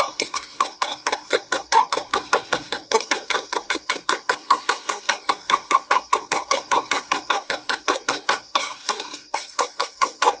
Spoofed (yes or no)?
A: yes